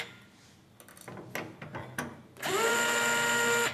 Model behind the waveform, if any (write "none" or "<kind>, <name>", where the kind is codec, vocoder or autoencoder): none